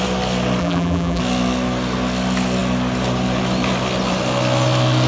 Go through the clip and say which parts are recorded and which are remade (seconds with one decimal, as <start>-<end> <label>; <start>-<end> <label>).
0.0-0.6 recorded; 0.6-1.2 remade; 1.2-5.1 recorded